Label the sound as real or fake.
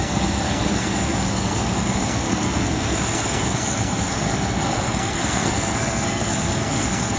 fake